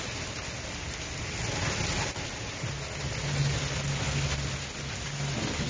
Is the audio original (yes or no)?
yes